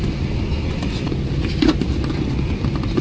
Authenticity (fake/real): real